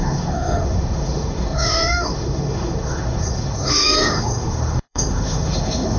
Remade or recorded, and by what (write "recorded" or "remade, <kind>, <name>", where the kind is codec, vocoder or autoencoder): remade, autoencoder, DAC-VAE